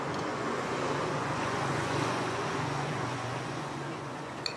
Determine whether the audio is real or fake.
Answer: fake